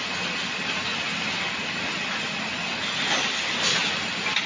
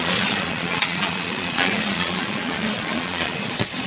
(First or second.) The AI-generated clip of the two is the second